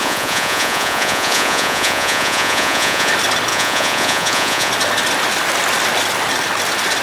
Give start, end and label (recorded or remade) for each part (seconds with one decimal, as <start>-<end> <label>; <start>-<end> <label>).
0.0-3.1 remade; 3.1-3.5 recorded; 3.5-4.7 remade; 4.7-7.0 recorded